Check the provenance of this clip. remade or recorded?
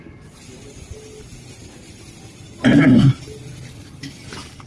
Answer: recorded